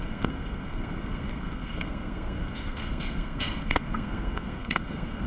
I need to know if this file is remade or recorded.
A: remade